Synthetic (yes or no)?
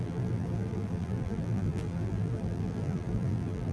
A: yes